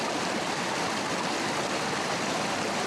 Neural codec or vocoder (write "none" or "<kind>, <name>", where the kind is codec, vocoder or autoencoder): none